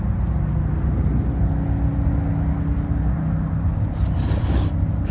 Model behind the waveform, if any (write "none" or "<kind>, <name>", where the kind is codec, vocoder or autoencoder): none